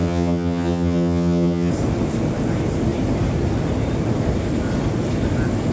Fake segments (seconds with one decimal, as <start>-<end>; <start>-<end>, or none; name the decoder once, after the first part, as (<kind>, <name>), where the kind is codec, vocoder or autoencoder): 0.0-1.7 (vocoder, HiFi-GAN)